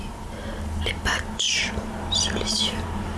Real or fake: fake